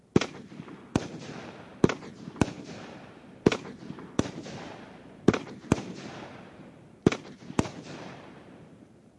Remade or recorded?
remade